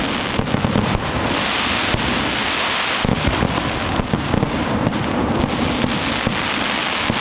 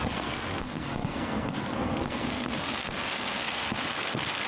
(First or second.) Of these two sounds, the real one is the first